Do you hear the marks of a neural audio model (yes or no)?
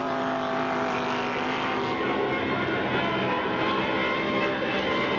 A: no